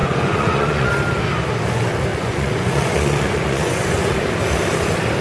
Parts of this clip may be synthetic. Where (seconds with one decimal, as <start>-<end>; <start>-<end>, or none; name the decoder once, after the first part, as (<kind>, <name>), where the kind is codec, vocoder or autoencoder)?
0.0-0.9 (vocoder, Vocos); 2.1-4.2